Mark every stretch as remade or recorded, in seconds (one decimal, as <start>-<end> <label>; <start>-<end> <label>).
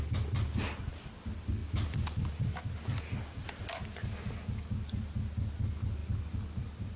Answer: 0.0-7.0 recorded